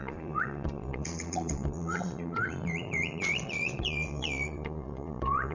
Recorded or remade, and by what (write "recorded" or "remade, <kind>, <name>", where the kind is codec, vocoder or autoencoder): remade, vocoder, Vocos